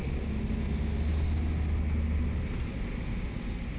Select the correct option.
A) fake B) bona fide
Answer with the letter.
B